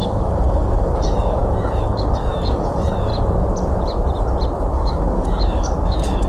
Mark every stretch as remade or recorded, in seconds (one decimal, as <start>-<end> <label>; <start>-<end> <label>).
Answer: 0.0-3.1 remade; 3.1-4.7 recorded; 4.7-6.3 remade